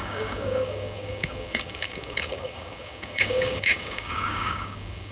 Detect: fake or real fake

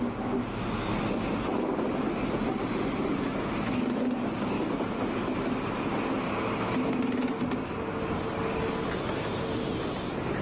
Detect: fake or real real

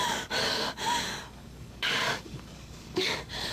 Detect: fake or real fake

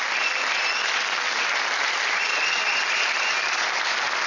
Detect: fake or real real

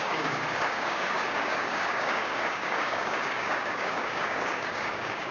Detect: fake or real fake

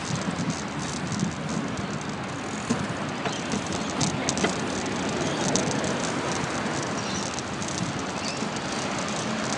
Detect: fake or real real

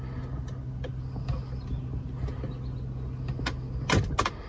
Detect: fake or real real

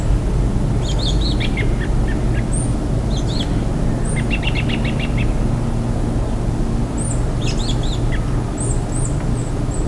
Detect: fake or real real